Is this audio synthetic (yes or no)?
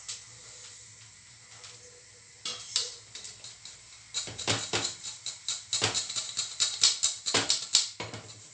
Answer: no